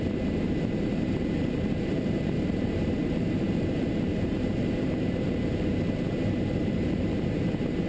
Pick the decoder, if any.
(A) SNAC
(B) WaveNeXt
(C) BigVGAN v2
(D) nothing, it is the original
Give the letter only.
C